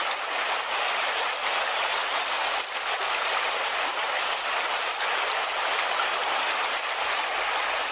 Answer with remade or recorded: recorded